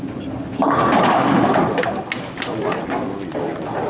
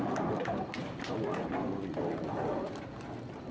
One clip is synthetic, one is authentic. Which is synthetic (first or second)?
second